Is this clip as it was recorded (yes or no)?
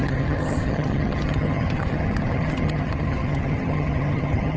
no